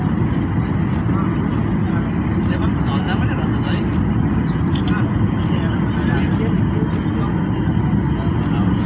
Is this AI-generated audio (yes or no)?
no